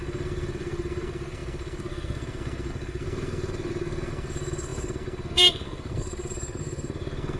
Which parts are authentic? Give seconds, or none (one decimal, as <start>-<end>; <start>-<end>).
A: none